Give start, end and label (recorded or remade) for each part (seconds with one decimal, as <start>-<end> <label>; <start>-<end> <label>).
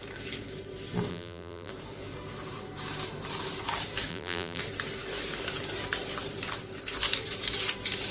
0.0-1.1 recorded; 1.1-1.7 remade; 1.7-4.1 recorded; 4.1-4.6 remade; 4.6-8.1 recorded